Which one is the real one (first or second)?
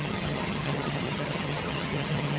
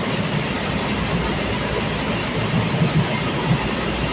second